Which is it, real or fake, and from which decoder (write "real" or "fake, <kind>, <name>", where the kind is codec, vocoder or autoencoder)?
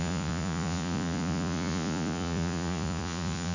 fake, vocoder, Vocos